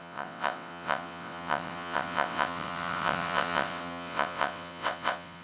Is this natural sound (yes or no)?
no